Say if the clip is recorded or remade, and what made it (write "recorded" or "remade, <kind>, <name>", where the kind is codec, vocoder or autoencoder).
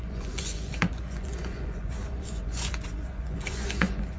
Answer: remade, vocoder, Vocos